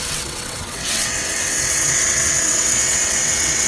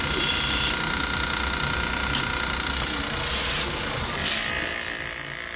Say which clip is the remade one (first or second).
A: first